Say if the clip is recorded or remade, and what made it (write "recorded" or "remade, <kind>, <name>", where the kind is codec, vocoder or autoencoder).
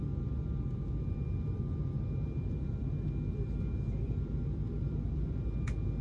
recorded